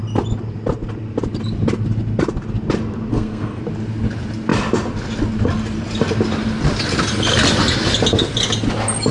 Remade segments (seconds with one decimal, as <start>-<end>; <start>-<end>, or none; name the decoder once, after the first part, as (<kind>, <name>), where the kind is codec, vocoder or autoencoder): 3.1-3.6 (codec, SNAC)